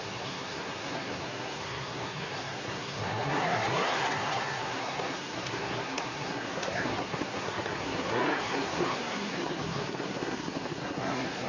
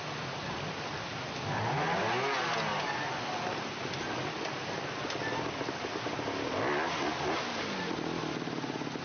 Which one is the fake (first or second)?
first